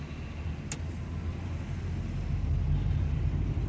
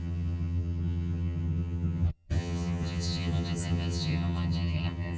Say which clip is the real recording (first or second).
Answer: first